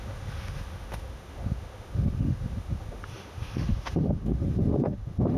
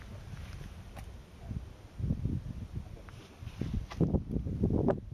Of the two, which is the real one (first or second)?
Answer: second